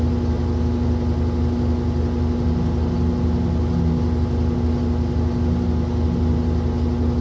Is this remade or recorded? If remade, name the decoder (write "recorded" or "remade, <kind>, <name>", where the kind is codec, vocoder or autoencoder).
recorded